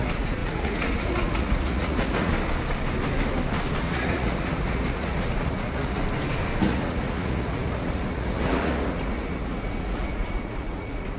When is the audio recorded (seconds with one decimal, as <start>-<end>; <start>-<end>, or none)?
2.3-3.8; 6.0-6.6